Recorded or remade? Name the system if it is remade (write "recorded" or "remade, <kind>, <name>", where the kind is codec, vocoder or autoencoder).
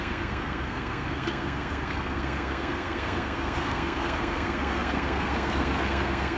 remade, codec, SNAC